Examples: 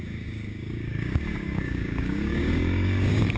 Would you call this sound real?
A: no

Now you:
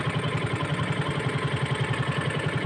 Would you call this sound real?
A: yes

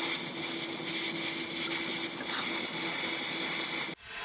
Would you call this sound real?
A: yes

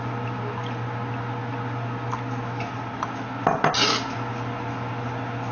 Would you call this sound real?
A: yes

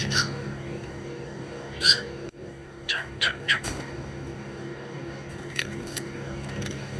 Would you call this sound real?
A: no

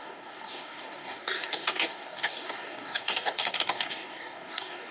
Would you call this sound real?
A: no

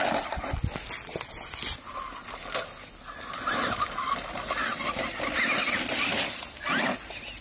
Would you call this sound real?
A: yes